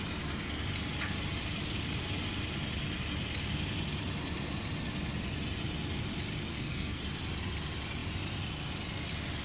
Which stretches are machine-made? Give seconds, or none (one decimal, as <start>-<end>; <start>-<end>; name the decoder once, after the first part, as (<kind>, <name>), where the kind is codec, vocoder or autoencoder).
6.5-7.0 (codec, SNAC)